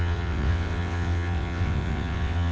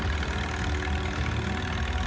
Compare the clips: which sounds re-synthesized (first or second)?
first